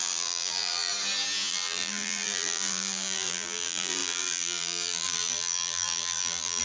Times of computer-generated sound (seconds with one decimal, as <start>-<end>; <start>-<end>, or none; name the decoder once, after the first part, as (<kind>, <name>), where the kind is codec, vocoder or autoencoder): 0.0-0.9 (vocoder, BigVGAN v2); 1.5-6.6